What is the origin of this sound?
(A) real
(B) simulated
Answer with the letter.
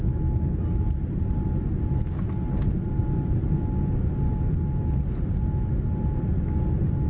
A